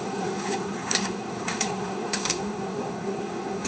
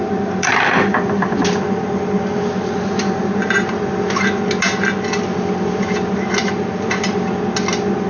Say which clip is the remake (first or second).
first